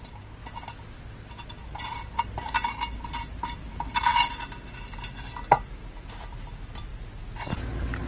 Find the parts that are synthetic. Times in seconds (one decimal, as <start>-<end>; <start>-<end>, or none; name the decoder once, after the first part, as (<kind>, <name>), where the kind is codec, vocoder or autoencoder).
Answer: none